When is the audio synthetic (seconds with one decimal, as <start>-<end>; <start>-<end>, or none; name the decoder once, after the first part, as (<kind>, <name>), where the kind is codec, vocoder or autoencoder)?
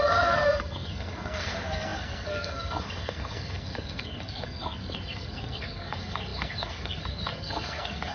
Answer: 0.0-8.1 (codec, SNAC)